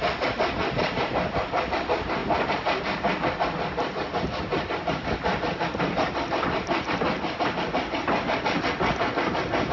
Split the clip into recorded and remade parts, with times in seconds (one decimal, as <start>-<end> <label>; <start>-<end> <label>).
0.0-9.7 recorded